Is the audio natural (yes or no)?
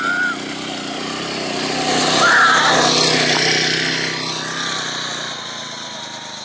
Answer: yes